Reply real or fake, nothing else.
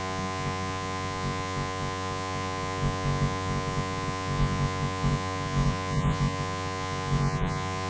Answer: fake